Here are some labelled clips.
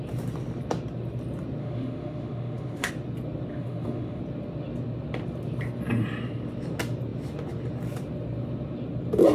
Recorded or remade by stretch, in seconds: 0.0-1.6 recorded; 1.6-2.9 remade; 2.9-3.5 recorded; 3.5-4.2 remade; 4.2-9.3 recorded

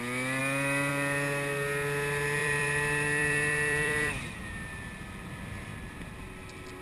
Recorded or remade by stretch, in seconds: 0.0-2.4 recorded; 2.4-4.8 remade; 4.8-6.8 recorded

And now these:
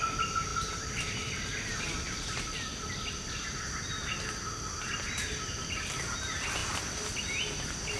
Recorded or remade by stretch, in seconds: 0.0-8.0 recorded